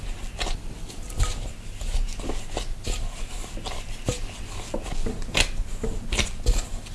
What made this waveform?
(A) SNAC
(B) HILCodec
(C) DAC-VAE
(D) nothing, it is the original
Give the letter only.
D